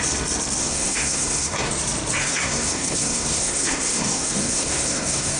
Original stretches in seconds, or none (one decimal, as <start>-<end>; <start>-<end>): 0.0-0.6; 1.7-2.2